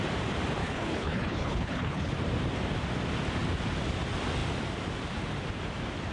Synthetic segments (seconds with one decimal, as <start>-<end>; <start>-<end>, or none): 0.6-2.1